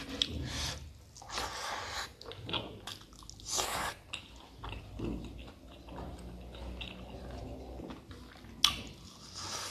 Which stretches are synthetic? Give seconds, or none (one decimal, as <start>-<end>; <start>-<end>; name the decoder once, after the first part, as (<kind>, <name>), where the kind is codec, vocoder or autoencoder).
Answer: none